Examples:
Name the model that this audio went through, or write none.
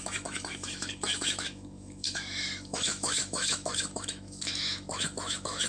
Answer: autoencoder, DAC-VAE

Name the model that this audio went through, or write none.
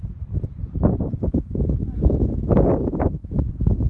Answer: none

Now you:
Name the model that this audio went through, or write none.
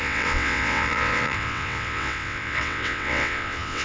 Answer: vocoder, WaveNeXt